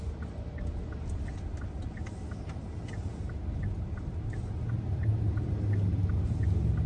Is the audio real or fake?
real